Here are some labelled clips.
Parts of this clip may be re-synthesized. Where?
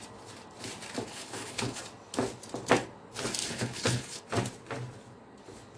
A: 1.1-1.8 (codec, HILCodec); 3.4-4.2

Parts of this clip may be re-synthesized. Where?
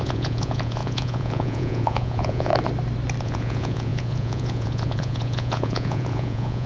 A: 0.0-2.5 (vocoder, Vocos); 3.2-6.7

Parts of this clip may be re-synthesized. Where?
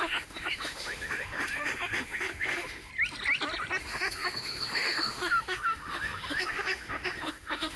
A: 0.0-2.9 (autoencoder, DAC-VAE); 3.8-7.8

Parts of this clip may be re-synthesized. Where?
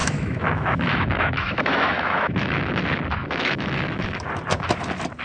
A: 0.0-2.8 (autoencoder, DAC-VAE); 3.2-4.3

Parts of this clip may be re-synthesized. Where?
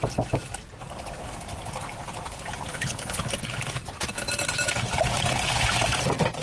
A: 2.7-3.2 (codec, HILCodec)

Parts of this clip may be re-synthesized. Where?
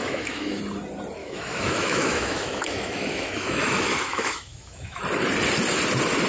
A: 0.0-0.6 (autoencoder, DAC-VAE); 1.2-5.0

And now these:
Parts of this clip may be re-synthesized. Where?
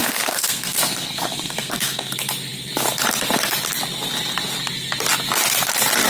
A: 0.0-2.1 (codec, SNAC)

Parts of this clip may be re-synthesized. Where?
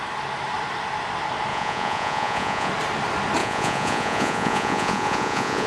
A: 1.5-2.7 (vocoder, Vocos); 3.4-5.7